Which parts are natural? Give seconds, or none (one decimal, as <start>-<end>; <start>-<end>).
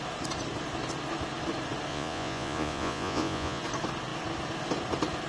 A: 0.0-1.9; 3.6-5.3